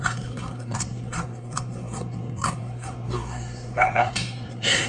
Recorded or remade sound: remade